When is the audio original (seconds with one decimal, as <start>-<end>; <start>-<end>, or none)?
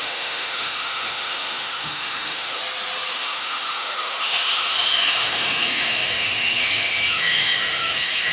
2.6-3.1